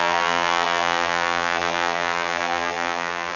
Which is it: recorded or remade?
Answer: remade